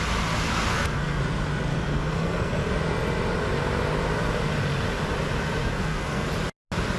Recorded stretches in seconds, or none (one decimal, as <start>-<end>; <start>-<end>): 0.0-0.7; 1.2-1.7; 2.7-5.6; 6.3-7.0